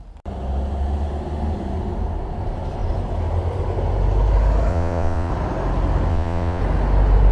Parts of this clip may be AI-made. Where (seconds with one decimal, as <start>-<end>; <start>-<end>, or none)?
4.7-5.3; 6.1-6.6